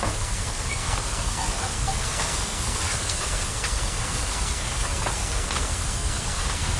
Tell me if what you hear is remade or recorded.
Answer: remade